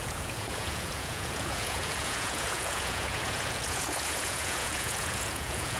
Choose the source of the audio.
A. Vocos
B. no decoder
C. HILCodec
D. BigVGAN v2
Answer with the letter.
A